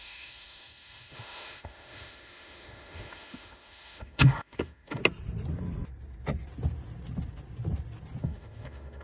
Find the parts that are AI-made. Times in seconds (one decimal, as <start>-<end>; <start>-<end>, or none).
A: 0.0-5.0; 8.2-9.0

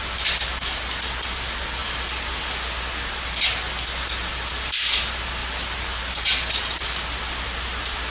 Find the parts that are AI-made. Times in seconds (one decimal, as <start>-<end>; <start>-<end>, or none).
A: none